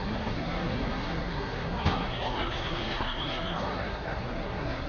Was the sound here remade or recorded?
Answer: remade